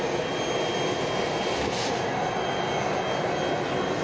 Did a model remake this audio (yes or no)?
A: no